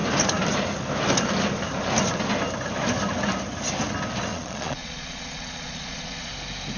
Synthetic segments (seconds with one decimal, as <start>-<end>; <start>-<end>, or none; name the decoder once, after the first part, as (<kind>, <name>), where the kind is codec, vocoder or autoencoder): 4.3-6.3 (vocoder, Vocos)